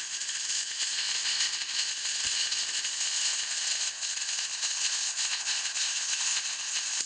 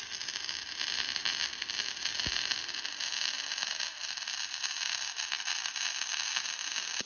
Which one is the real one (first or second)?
second